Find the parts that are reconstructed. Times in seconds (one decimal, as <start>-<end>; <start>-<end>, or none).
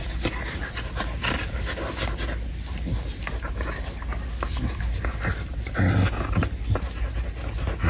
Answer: none